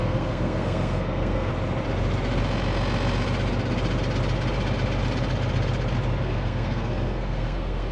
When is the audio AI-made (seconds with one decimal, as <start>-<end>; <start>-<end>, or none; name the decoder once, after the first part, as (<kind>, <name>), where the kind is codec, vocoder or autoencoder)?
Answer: 0.0-1.5 (codec, SNAC); 6.2-7.9